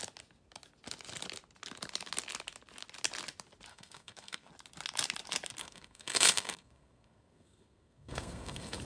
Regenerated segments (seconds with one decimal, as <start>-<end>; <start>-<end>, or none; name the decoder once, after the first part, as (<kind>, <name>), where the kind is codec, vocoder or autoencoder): 3.7-4.5 (codec, SNAC); 5.6-8.8